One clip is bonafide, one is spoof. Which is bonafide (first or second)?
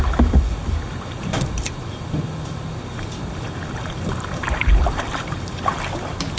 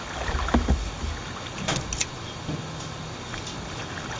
second